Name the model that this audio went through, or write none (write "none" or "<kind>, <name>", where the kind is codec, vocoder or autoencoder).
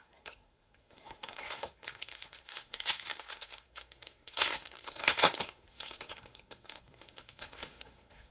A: codec, SNAC